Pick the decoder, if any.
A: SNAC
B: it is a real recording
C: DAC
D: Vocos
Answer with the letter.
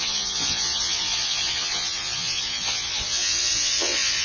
D